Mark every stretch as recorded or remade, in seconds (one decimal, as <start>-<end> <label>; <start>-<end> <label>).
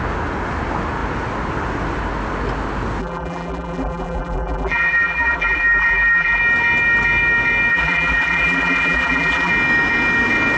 0.0-3.0 recorded; 3.0-6.4 remade; 6.4-7.7 recorded; 7.7-9.5 remade; 9.5-10.6 recorded